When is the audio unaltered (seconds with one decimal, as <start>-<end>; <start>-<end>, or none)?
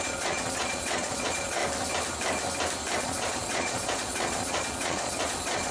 1.6-3.0